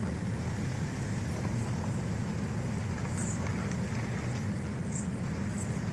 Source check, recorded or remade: recorded